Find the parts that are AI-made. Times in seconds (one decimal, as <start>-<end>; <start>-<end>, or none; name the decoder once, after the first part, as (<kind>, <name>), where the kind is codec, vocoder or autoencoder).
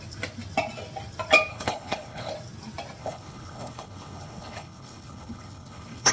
1.5-2.3 (codec, HILCodec); 3.0-6.1